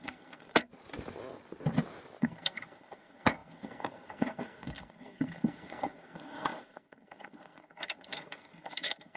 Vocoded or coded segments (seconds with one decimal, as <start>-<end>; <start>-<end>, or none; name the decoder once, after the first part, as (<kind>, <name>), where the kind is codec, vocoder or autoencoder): 0.0-0.7 (codec, SNAC); 2.2-9.2